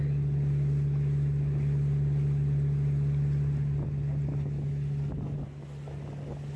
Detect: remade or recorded recorded